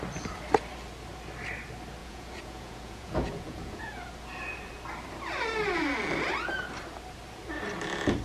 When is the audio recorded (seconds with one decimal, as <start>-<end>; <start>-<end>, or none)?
0.0-2.0; 3.8-8.2